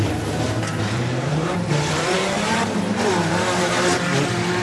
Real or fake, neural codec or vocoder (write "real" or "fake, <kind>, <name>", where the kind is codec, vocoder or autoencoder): fake, vocoder, BigVGAN v2